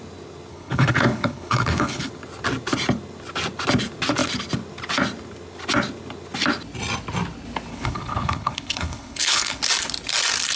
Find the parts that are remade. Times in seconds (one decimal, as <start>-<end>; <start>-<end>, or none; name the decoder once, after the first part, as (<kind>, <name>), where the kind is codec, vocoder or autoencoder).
0.5-2.1 (codec, HILCodec); 7.7-9.6